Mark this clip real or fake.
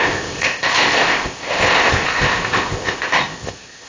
fake